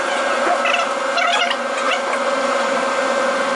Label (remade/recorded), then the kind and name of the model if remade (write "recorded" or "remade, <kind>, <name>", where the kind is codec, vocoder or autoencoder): recorded